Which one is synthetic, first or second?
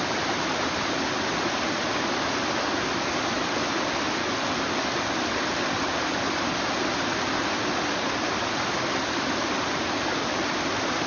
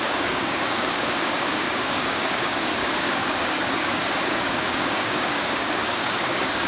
second